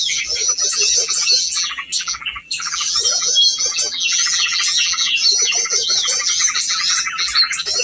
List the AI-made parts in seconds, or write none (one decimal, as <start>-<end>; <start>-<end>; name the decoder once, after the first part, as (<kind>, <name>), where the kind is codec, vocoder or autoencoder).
0.0-7.8 (vocoder, BigVGAN v2)